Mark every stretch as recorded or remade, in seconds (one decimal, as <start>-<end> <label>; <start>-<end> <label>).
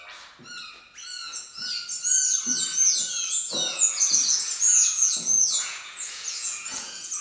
0.0-1.2 recorded; 1.2-1.7 remade; 1.7-2.7 recorded; 2.7-7.2 remade